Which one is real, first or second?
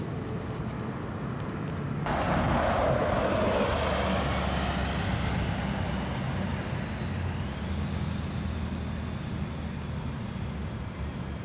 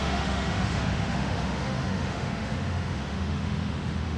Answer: first